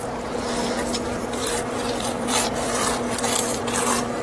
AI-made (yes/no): no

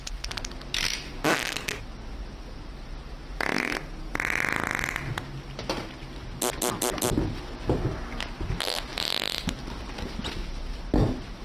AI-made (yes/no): no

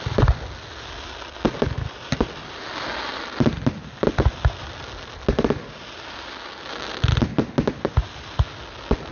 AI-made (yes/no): no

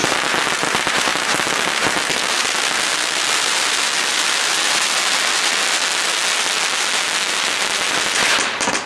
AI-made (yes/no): no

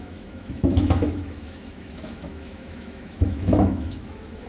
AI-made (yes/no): yes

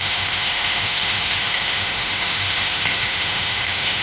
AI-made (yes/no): yes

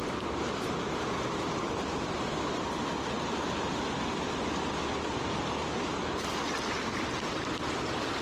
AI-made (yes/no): no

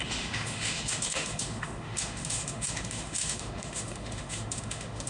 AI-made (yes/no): yes